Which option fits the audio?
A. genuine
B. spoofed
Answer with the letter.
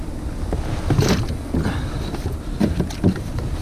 A